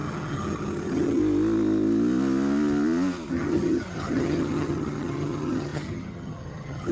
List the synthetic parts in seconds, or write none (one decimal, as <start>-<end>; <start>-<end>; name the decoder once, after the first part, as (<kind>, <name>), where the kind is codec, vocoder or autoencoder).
0.0-1.2 (vocoder, HiFi-GAN); 3.3-6.9